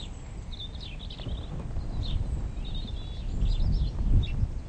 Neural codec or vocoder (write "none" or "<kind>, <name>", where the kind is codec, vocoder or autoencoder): none